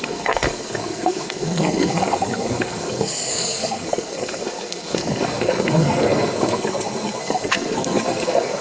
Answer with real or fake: fake